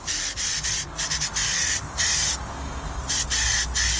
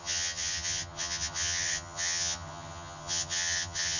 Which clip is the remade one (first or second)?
second